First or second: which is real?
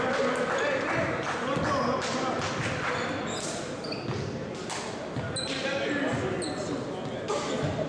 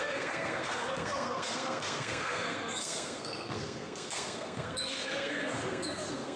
first